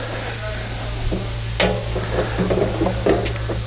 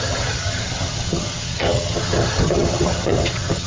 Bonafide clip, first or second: first